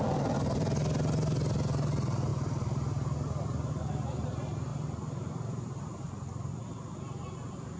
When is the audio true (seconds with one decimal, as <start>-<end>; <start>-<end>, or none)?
0.0-4.7; 5.8-7.8